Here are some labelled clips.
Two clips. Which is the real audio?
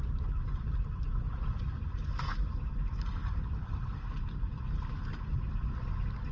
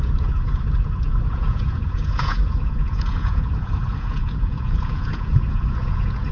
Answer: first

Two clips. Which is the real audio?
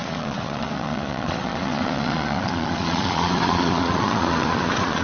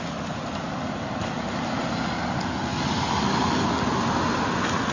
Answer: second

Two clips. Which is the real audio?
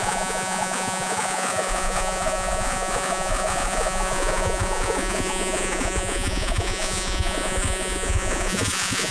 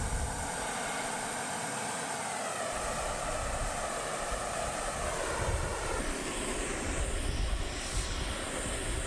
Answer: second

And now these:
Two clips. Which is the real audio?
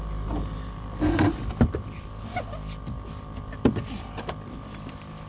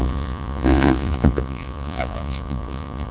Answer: first